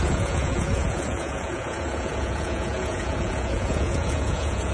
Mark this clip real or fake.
fake